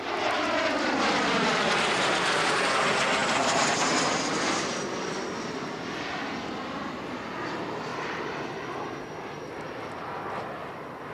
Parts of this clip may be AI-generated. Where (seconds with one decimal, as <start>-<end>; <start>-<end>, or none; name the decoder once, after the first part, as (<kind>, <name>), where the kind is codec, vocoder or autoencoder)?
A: 3.2-6.1 (vocoder, BigVGAN v2)